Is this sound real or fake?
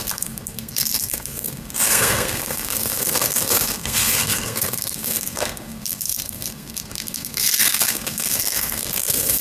fake